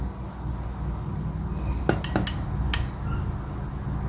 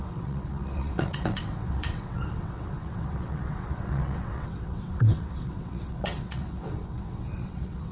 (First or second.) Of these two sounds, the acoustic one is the first